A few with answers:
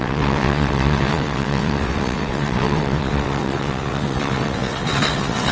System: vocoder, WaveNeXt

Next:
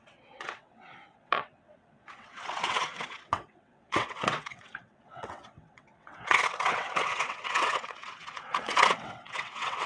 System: vocoder, WaveNeXt